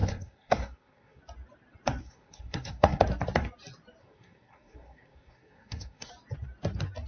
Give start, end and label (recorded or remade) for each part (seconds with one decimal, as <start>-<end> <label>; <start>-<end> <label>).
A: 0.0-1.2 remade; 1.2-2.0 recorded; 2.0-3.0 remade; 3.0-4.0 recorded; 4.0-6.1 remade; 6.1-7.1 recorded